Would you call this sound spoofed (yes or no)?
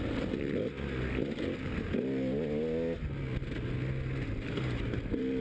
no